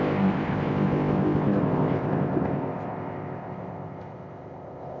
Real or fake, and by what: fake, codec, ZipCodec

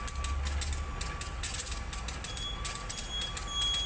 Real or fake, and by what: real